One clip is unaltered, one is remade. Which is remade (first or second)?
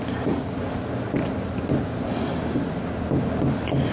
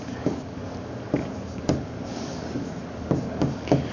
second